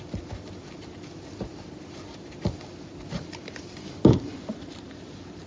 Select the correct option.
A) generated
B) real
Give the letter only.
B